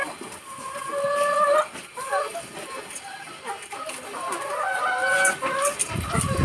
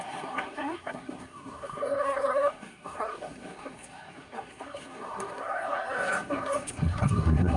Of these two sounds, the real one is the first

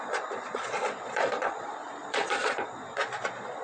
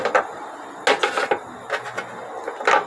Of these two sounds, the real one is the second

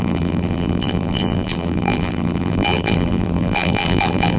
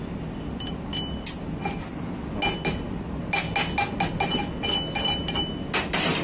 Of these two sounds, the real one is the second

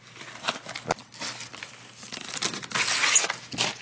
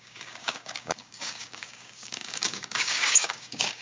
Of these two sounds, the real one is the first